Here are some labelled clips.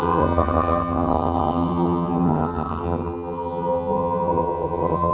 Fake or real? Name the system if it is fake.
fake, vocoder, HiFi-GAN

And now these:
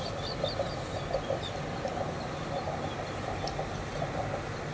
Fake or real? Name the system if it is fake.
real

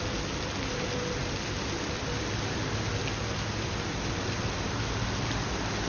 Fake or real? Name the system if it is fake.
real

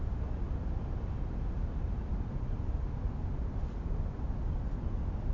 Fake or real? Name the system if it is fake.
real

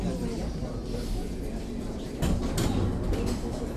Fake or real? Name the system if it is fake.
real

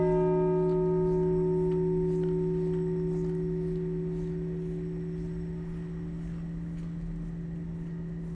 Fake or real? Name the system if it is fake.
real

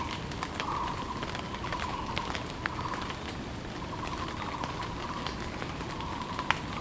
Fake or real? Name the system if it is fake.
real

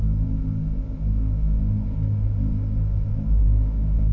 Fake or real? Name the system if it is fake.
fake, autoencoder, DAC-VAE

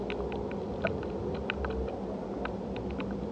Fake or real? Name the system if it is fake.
real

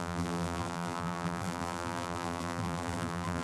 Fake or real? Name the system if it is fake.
fake, vocoder, BigVGAN v2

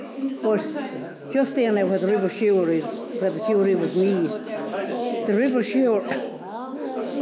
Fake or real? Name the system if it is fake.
fake, autoencoder, DAC-VAE